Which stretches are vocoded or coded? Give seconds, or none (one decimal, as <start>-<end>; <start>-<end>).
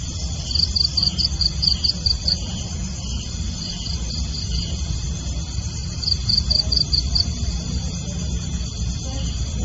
1.0-2.5; 5.8-8.3